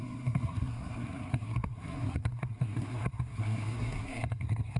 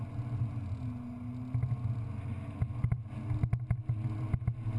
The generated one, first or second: first